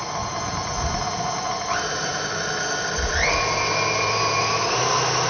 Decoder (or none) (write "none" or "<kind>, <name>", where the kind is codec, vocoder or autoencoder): none